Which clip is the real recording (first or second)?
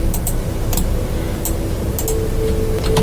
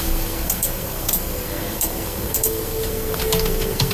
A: first